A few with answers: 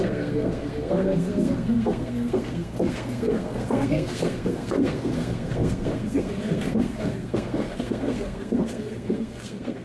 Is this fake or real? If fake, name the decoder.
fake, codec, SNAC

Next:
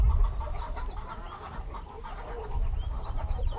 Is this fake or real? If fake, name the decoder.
real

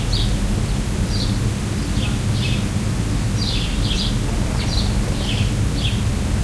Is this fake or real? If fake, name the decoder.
real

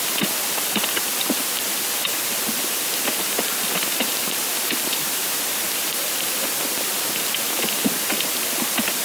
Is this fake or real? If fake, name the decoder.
real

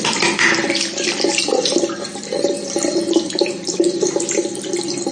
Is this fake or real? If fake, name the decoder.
fake, vocoder, BigVGAN v2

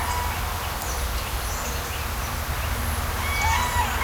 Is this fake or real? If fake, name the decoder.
real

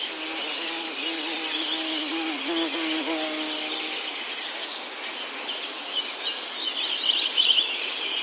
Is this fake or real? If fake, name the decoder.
real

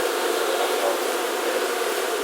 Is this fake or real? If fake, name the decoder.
fake, vocoder, BigVGAN v2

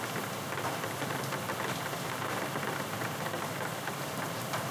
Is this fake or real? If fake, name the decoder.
real